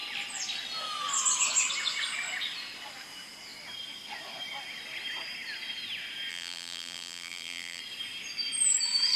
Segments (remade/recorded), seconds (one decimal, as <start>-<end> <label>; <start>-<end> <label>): 0.0-6.3 recorded; 6.3-7.8 remade; 7.8-9.2 recorded